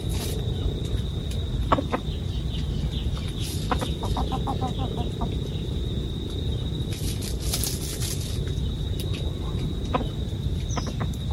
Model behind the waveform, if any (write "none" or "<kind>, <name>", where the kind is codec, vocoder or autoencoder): none